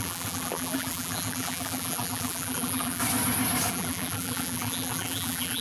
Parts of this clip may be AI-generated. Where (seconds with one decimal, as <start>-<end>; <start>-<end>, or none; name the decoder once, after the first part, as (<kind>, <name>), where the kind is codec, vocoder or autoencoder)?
0.0-3.0 (vocoder, BigVGAN v2); 3.7-5.6